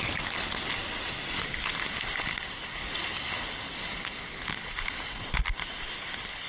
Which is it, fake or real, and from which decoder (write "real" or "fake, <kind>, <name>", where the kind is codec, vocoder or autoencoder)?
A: real